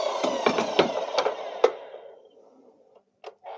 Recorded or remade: recorded